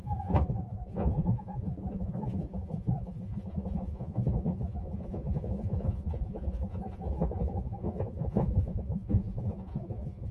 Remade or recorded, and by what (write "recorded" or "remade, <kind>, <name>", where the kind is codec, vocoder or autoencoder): remade, vocoder, Vocos